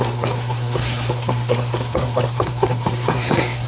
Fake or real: fake